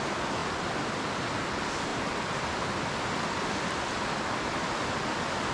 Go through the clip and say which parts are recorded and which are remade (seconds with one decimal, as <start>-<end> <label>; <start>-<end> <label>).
0.0-5.5 recorded